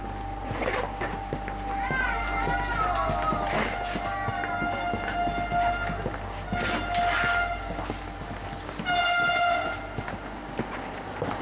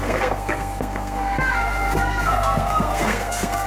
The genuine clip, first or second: first